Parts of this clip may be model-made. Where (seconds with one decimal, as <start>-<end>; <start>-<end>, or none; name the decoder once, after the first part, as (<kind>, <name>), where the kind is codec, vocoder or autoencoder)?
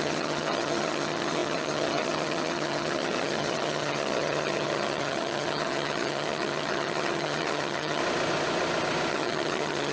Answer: 0.0-8.0 (vocoder, HiFi-GAN); 9.1-9.9